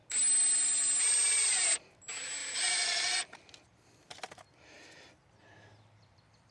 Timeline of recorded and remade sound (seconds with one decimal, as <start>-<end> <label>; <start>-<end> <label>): 0.0-6.5 recorded